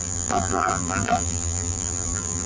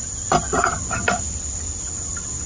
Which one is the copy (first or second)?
first